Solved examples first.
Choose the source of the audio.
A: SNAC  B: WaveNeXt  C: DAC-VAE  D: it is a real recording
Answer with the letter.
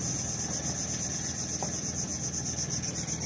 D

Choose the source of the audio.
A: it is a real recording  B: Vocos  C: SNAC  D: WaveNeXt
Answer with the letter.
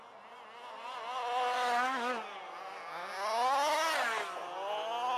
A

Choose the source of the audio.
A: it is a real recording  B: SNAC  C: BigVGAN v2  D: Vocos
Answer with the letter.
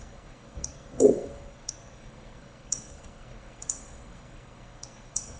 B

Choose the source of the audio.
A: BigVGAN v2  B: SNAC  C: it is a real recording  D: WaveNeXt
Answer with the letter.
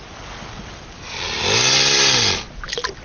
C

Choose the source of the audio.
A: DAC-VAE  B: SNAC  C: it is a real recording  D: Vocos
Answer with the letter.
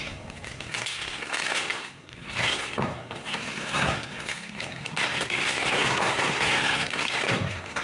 B